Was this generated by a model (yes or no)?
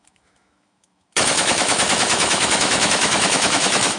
yes